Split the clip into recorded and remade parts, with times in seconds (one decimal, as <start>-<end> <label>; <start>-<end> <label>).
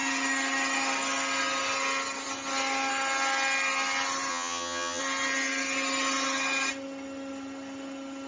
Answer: 0.0-4.3 recorded; 4.3-5.0 remade; 5.0-8.3 recorded